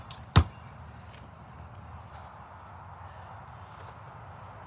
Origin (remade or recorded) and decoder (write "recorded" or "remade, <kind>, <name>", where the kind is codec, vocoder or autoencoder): recorded